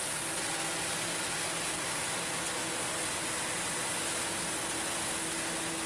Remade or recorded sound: recorded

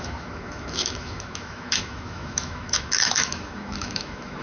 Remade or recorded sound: remade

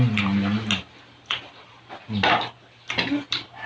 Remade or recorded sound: recorded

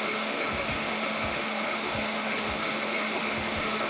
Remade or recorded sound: remade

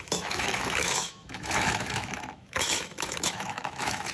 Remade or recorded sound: remade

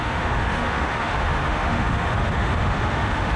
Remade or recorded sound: remade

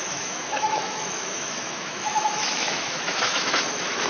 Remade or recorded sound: remade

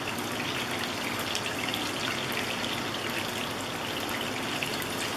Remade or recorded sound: recorded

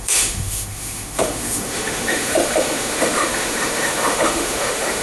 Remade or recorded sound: remade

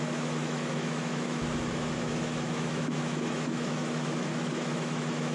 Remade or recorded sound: remade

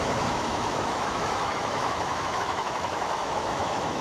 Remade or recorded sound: remade